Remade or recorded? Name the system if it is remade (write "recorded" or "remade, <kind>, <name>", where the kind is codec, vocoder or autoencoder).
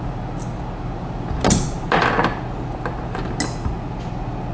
recorded